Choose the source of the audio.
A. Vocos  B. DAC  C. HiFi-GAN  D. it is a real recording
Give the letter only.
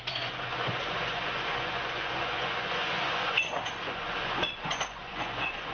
A